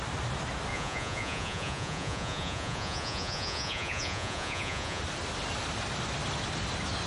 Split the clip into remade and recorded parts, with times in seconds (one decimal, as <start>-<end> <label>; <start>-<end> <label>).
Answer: 0.0-0.7 recorded; 0.7-5.0 remade; 5.0-7.1 recorded